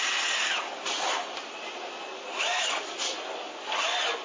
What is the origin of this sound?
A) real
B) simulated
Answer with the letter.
A